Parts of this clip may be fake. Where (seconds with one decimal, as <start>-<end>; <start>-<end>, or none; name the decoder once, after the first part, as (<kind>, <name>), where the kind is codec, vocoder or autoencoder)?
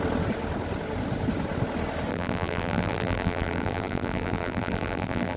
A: 2.1-5.4 (vocoder, BigVGAN v2)